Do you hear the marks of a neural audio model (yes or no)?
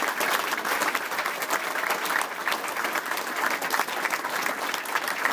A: no